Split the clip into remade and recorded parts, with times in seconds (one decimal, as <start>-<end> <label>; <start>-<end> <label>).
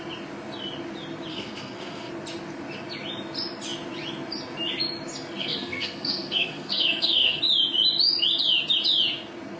0.0-1.3 recorded; 1.3-2.1 remade; 2.1-5.4 recorded; 5.4-7.4 remade; 7.4-9.6 recorded